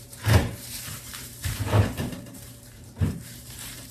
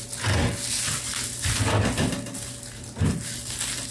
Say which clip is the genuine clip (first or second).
second